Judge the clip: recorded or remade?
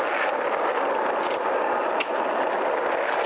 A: recorded